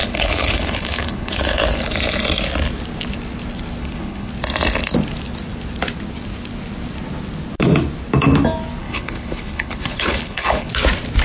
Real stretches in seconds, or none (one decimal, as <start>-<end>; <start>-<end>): 1.6-3.8; 4.3-8.8; 10.7-11.2